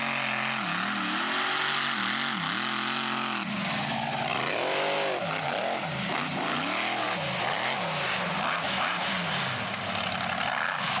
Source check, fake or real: real